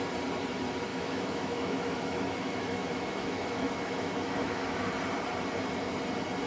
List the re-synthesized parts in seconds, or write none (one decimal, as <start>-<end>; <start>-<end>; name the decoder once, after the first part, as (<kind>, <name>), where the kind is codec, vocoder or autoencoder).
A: 0.9-4.8 (autoencoder, DAC-VAE)